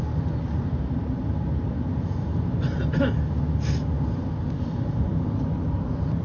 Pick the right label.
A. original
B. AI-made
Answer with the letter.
A